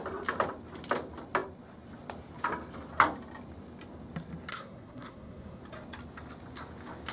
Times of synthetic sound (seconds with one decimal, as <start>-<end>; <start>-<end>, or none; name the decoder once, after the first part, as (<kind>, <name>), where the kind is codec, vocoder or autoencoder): 4.5-5.6 (codec, SNAC)